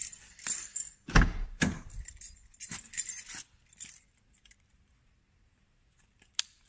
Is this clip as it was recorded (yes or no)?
yes